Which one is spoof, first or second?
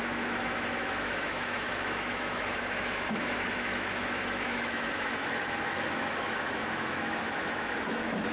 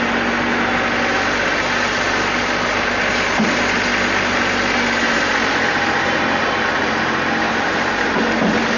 first